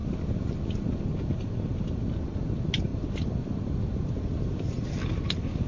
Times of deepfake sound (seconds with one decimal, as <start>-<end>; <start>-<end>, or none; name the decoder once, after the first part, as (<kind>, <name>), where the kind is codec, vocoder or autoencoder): none